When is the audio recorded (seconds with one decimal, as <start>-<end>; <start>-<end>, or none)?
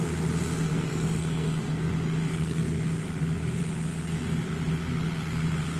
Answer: 0.0-0.7; 1.9-2.3; 2.8-5.8